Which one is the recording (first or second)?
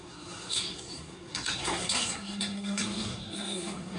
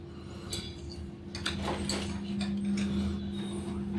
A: second